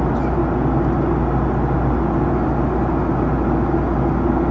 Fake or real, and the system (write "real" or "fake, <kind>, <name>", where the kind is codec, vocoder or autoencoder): real